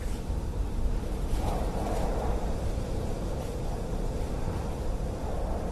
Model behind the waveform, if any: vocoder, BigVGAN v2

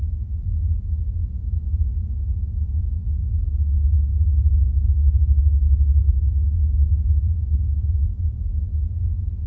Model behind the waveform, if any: none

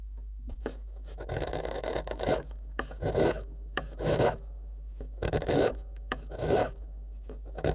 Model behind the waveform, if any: autoencoder, DAC-VAE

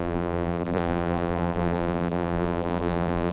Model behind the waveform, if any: vocoder, BigVGAN v2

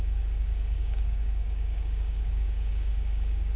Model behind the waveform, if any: codec, DAC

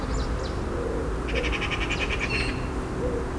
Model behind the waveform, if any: none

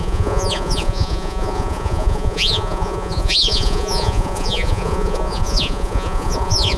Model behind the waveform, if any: vocoder, Vocos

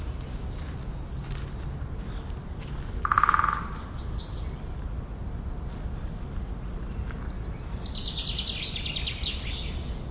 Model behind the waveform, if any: none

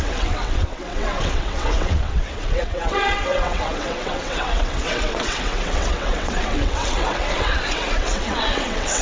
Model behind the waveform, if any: vocoder, WaveNeXt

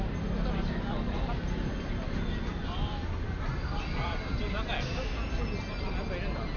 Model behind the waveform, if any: none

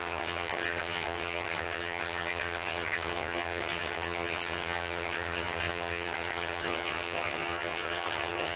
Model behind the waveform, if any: vocoder, HiFi-GAN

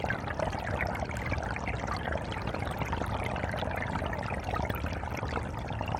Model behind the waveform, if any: none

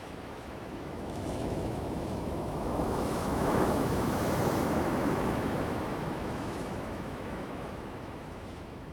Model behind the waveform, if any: autoencoder, DAC-VAE